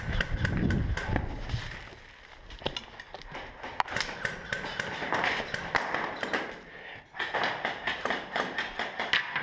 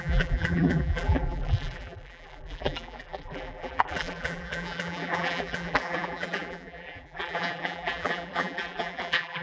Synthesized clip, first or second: second